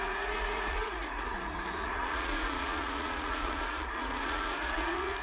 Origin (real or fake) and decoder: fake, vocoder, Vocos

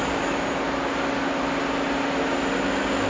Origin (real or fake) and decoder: real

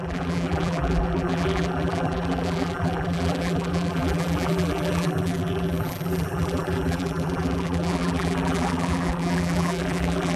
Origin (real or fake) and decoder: fake, vocoder, BigVGAN v2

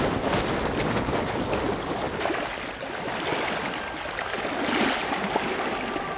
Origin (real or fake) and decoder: real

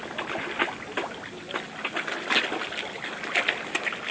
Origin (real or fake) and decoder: real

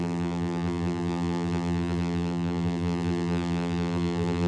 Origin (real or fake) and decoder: fake, vocoder, BigVGAN v2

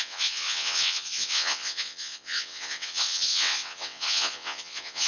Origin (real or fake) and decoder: fake, vocoder, WaveNeXt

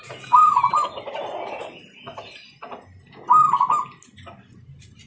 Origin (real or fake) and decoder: real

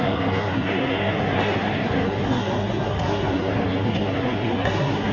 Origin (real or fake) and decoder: fake, codec, SNAC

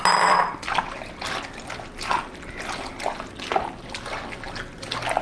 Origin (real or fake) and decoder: real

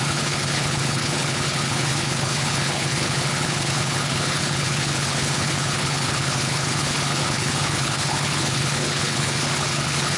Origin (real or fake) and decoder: fake, codec, HILCodec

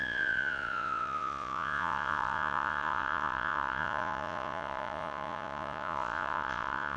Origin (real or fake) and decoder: fake, vocoder, Vocos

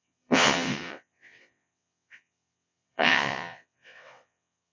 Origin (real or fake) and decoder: fake, vocoder, WaveNeXt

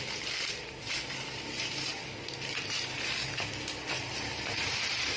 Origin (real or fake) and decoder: real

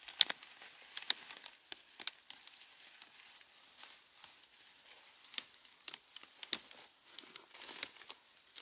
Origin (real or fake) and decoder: real